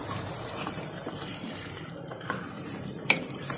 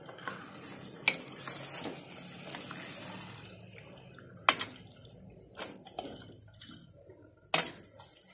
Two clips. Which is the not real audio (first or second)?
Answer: first